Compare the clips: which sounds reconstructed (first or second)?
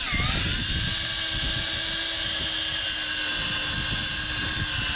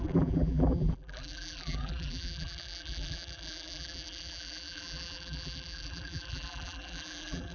second